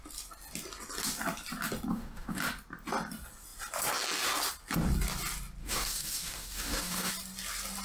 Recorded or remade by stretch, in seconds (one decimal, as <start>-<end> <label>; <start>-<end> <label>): 0.0-1.9 recorded; 1.9-2.4 remade; 2.4-5.6 recorded; 5.6-7.1 remade; 7.1-7.8 recorded